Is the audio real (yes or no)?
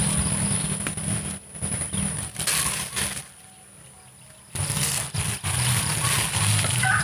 yes